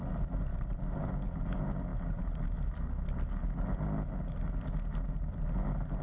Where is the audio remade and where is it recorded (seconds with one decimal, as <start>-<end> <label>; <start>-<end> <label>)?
0.0-0.5 recorded; 0.5-1.2 remade; 1.2-6.0 recorded